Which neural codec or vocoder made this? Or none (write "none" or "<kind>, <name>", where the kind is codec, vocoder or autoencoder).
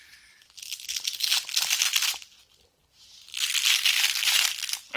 none